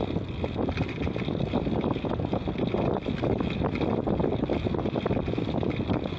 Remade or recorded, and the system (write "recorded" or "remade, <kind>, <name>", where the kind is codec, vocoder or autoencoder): recorded